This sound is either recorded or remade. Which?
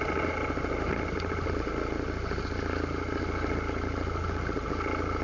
recorded